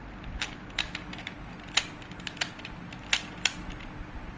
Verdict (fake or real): real